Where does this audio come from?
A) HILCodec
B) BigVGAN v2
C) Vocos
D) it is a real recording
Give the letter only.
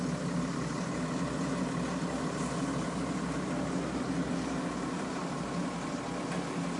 D